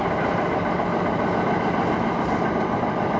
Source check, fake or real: fake